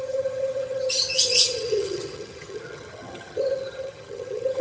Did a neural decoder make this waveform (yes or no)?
yes